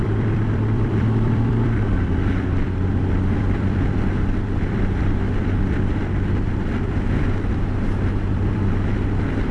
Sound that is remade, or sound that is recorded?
remade